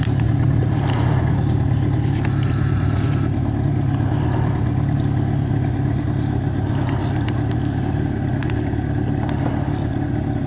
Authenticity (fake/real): real